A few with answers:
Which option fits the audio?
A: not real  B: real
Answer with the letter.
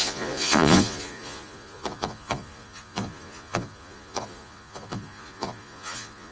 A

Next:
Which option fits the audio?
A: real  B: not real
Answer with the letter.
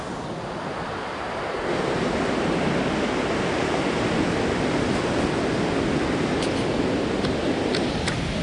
A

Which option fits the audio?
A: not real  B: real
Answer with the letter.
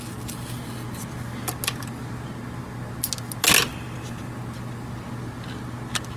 B